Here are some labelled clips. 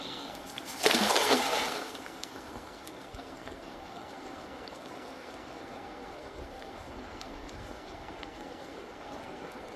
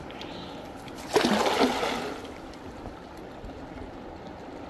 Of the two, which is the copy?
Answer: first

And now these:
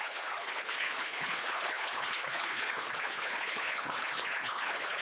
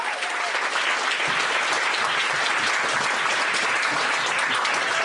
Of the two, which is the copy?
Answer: first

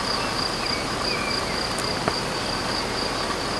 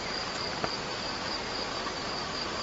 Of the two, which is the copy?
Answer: second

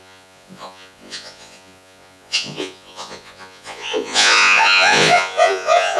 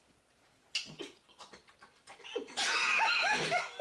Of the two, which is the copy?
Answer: first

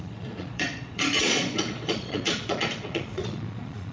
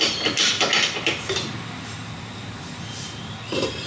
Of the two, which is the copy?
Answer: first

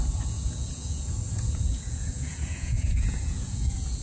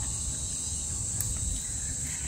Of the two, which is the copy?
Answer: first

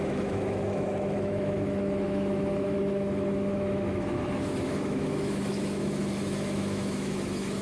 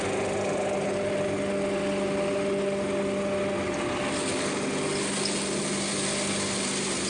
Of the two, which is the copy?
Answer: first